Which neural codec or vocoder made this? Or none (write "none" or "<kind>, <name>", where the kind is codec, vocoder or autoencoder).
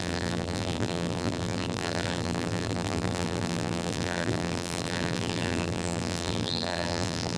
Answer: vocoder, BigVGAN v2